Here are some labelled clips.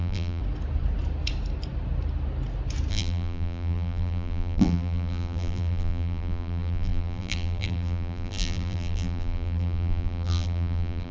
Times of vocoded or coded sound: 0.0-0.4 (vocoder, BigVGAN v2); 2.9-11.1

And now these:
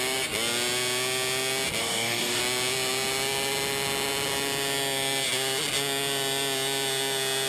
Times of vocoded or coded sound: 1.8-2.4 (codec, DAC)

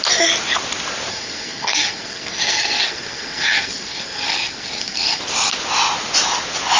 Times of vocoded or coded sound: 1.1-5.2 (codec, SNAC)

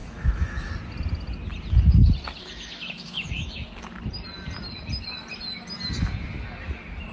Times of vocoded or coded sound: 0.0-0.7 (autoencoder, DAC-VAE); 2.4-3.7